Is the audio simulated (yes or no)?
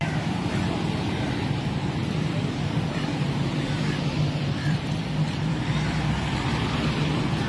yes